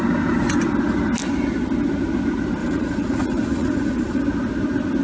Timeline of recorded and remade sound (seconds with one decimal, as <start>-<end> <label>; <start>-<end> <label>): 0.0-2.6 recorded; 2.6-4.2 remade; 4.2-5.0 recorded